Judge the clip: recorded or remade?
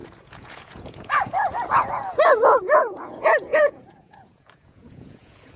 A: remade